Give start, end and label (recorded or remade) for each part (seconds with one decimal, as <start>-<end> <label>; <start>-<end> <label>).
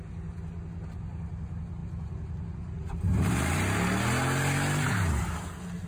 0.0-5.9 recorded